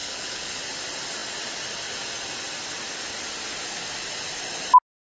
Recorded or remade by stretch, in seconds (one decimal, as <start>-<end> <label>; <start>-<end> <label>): 0.0-0.6 remade; 0.6-5.0 recorded